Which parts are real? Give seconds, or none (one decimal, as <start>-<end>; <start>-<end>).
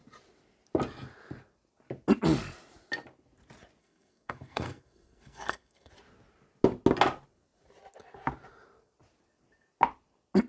0.0-3.8; 5.9-10.5